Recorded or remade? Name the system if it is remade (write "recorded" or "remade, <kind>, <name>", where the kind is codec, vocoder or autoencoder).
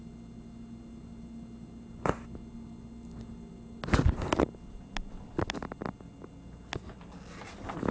recorded